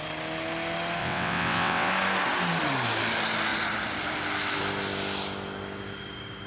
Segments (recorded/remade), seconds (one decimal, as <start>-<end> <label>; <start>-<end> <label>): 0.0-1.0 recorded; 1.0-1.9 remade; 1.9-6.5 recorded